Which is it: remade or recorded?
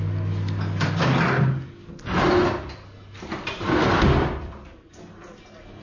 recorded